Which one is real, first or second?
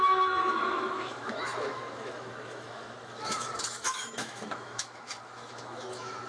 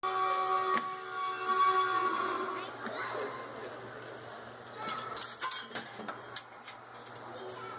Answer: second